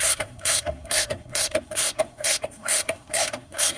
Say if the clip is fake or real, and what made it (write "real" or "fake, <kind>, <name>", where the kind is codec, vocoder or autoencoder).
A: fake, codec, SNAC